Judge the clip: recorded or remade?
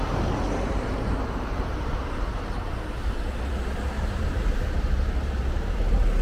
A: remade